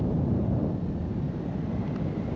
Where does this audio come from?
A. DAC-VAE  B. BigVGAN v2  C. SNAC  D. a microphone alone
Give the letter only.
D